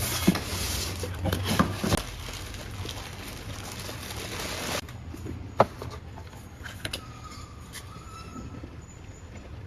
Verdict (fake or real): real